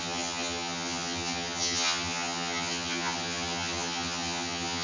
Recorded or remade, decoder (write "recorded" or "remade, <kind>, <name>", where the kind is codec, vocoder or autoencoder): remade, vocoder, HiFi-GAN